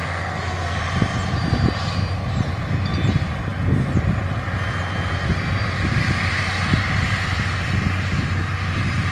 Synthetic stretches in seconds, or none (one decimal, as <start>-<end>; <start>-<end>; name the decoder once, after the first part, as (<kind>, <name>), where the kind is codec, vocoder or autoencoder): 0.0-0.8 (codec, SNAC)

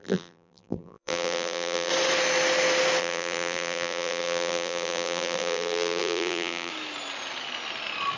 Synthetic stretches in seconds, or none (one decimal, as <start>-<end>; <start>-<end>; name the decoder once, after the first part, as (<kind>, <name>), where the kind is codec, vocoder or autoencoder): 0.0-1.9 (vocoder, BigVGAN v2); 3.0-6.7

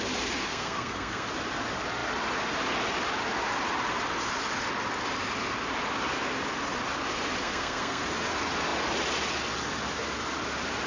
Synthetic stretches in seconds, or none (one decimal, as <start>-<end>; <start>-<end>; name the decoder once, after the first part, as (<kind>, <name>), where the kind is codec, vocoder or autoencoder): 0.5-1.3 (codec, SNAC); 7.4-8.0

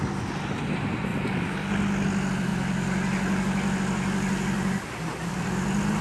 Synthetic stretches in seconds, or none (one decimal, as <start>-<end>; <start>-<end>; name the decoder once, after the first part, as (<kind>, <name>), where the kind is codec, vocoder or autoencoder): none